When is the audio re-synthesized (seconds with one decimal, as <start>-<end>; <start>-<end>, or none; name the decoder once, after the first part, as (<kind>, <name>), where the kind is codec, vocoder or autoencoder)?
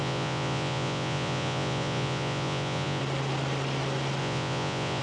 0.0-3.0 (vocoder, Vocos); 4.2-5.0